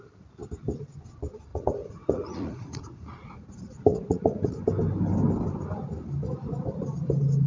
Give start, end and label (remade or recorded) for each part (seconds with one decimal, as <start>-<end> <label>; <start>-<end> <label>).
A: 0.0-1.5 recorded; 1.5-4.6 remade; 4.6-7.5 recorded